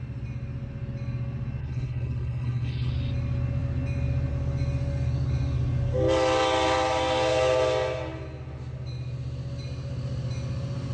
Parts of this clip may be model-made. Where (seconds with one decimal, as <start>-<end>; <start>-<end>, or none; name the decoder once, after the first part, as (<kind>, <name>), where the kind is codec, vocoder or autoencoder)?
1.6-2.9 (codec, HILCodec)